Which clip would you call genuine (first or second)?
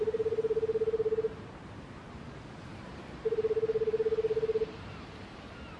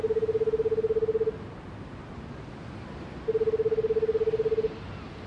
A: second